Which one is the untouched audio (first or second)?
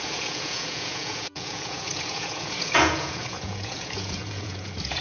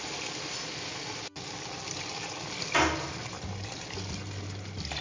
second